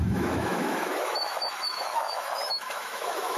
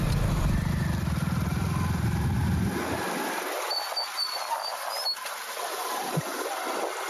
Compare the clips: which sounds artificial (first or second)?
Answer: first